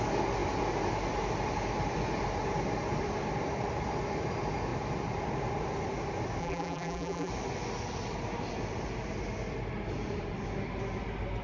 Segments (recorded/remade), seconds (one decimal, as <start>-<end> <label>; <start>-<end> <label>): 0.0-6.4 recorded; 6.4-7.3 remade; 7.3-11.4 recorded

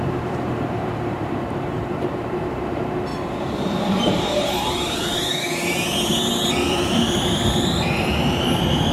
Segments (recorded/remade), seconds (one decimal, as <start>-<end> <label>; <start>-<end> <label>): 0.0-8.9 remade

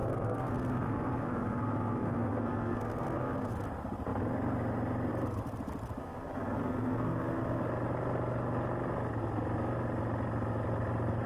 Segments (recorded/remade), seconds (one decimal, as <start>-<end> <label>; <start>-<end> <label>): 0.0-3.5 remade; 3.5-6.0 recorded; 6.0-7.6 remade; 7.6-11.3 recorded

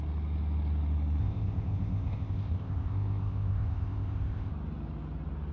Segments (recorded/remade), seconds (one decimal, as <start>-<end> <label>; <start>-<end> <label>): 0.0-1.2 recorded; 1.2-4.5 remade; 4.5-5.5 recorded